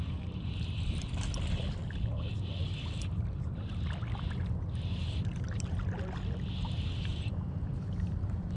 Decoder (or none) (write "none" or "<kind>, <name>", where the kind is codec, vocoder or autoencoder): none